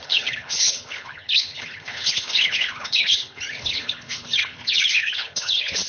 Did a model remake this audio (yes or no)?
yes